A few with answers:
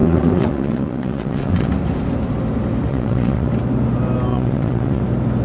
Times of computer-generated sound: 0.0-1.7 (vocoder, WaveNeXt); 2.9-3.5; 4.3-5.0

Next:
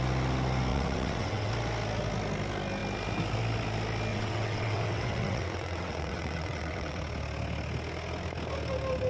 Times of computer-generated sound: 0.7-1.5 (vocoder, WaveNeXt); 4.1-7.0